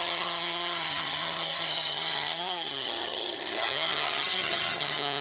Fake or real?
fake